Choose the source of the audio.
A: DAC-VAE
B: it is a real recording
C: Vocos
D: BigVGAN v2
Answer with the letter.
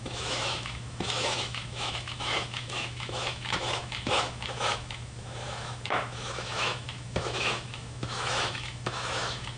A